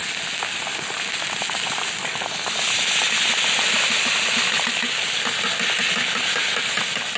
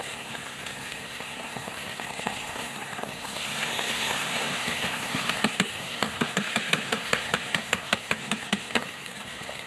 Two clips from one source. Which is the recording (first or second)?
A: first